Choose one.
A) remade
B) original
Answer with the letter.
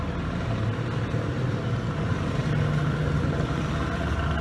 B